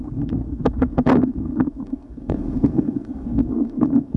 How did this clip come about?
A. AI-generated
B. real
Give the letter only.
A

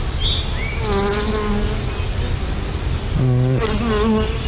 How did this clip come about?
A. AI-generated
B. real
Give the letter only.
B